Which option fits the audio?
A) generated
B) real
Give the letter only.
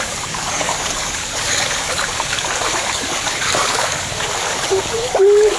A